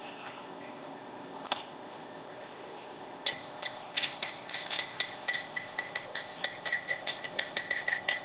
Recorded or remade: remade